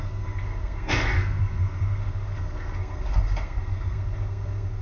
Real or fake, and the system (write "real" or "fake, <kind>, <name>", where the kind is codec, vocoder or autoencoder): fake, codec, SNAC